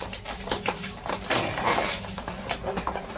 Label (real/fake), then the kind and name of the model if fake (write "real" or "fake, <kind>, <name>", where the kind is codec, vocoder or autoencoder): real